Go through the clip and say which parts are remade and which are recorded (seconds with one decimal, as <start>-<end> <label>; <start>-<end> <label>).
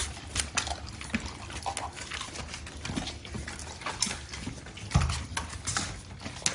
0.0-6.5 recorded